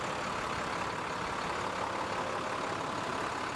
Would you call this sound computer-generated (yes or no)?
no